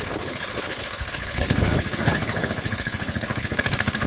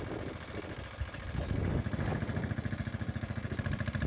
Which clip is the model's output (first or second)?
first